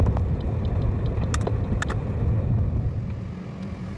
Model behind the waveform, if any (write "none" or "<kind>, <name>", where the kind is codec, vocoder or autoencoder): none